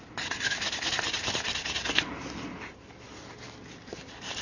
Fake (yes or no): no